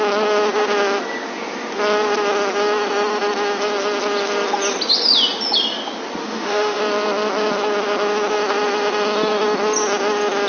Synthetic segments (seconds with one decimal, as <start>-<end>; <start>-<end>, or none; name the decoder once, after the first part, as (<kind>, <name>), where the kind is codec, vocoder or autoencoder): 6.2-6.8 (autoencoder, DAC-VAE)